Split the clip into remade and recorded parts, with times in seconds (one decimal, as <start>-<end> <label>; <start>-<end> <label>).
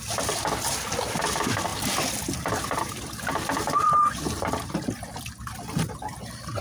0.0-6.6 recorded